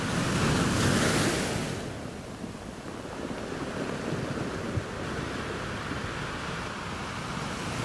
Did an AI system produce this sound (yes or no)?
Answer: no